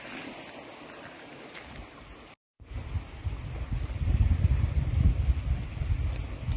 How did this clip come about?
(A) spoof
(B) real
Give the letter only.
B